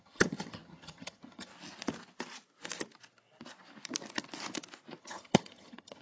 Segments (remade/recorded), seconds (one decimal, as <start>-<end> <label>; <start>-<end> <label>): 0.0-1.5 remade; 1.5-5.0 recorded; 5.0-6.0 remade